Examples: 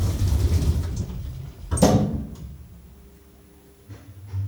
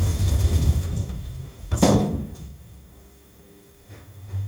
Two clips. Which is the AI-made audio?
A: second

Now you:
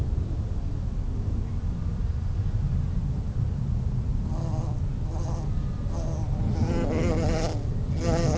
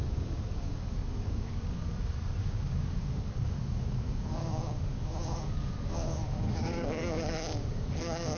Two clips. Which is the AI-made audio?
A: second